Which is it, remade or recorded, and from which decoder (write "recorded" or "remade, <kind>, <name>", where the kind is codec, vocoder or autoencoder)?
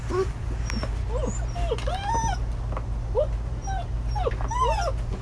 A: recorded